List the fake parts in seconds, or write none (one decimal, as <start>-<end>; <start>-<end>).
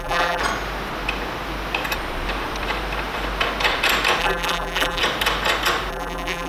0.0-0.4; 4.2-5.0; 5.9-6.5